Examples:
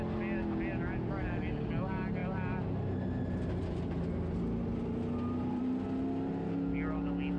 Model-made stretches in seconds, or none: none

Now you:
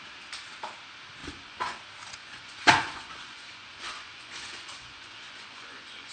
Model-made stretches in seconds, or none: 1.2-1.8 (vocoder, Vocos); 2.2-6.1

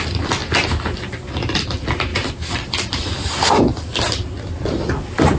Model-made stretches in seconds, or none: 0.0-0.4 (vocoder, BigVGAN v2); 1.0-3.7; 4.5-5.4

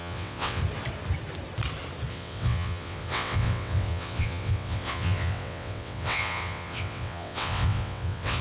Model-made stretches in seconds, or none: 0.0-0.6 (vocoder, WaveNeXt); 2.1-8.4

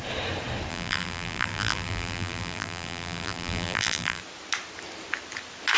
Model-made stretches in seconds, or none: 0.7-4.2 (vocoder, BigVGAN v2)